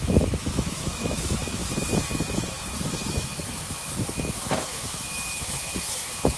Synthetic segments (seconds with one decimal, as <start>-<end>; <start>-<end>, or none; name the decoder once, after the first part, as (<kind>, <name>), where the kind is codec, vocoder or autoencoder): 0.0-6.4 (autoencoder, DAC-VAE)

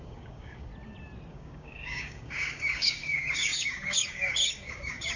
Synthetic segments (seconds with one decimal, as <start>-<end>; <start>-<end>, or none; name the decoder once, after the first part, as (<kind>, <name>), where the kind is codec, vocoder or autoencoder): 0.0-0.7 (codec, DAC); 1.3-5.2

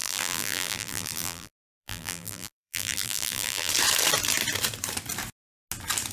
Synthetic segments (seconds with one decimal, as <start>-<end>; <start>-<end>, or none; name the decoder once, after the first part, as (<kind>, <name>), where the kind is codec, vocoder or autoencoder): 0.0-3.7 (vocoder, BigVGAN v2)